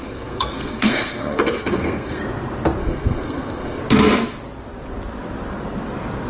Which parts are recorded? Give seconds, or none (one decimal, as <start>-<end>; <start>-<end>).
2.2-2.8; 3.8-6.3